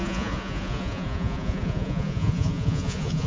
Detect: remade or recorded remade